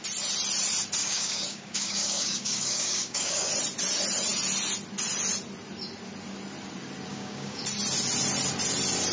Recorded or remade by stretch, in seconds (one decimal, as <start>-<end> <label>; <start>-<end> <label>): 0.0-1.0 recorded; 1.0-3.5 remade; 3.5-7.1 recorded; 7.1-7.6 remade; 7.6-9.1 recorded